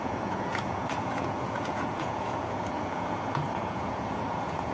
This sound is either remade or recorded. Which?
remade